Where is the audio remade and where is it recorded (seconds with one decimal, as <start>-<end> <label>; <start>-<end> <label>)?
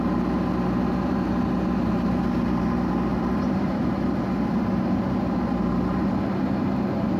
0.0-3.1 recorded; 3.1-4.7 remade; 4.7-7.2 recorded